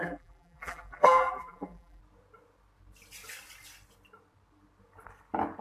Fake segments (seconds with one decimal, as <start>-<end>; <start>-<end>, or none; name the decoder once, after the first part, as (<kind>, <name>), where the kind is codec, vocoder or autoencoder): 0.0-2.0 (vocoder, BigVGAN v2)